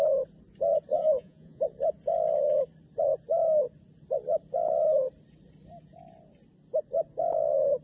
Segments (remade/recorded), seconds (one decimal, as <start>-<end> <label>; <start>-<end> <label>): 0.0-0.9 recorded; 0.9-1.6 remade; 1.6-7.8 recorded